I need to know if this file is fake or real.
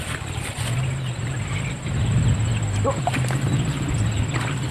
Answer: real